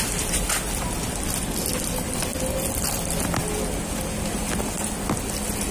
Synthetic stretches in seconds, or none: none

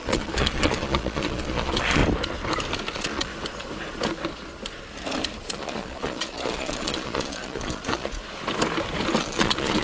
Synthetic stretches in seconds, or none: 0.0-2.0 (vocoder, Vocos); 2.9-3.3; 5.4-8.2; 9.2-9.8

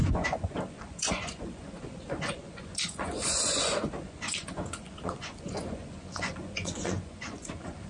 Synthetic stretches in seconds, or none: 0.0-7.9 (vocoder, Vocos)